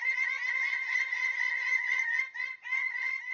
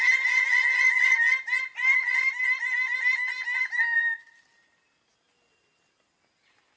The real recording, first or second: second